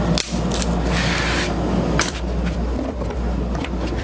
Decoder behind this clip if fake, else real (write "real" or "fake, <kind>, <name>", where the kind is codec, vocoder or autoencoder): real